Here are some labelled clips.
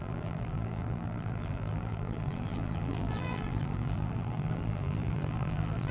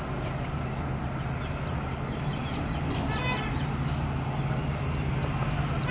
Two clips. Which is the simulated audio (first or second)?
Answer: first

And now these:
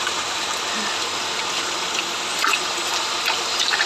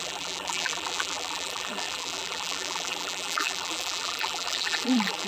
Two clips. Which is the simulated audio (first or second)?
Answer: second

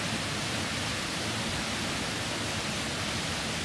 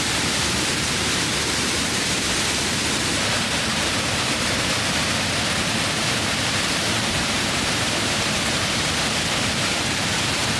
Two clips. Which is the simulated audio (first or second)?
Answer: second